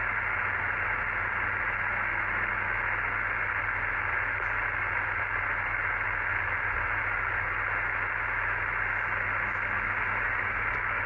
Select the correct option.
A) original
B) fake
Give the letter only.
A